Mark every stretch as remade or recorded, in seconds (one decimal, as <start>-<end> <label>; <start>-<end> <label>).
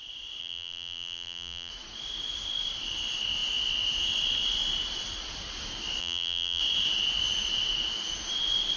0.0-0.4 recorded; 0.4-1.7 remade; 1.7-6.0 recorded; 6.0-6.6 remade; 6.6-8.8 recorded